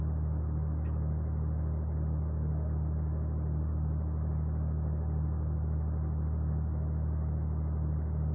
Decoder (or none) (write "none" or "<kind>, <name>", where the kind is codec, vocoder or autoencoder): none